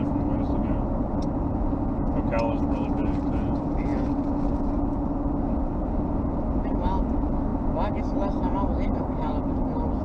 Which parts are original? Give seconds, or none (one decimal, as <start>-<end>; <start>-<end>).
0.0-10.0